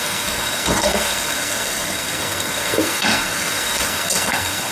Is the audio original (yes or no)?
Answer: no